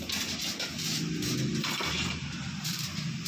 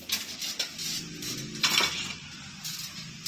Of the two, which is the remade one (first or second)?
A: first